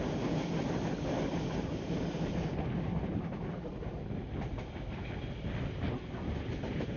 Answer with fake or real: real